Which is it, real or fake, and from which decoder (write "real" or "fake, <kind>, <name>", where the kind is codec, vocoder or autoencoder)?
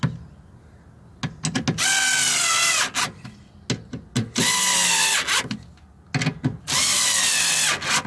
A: real